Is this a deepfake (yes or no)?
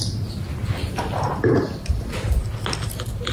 no